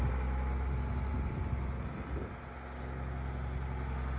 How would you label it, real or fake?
real